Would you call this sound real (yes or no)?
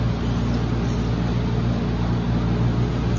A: yes